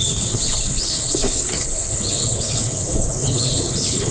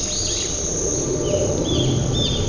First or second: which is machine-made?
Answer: first